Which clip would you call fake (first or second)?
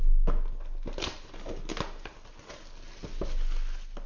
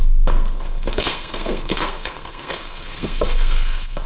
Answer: second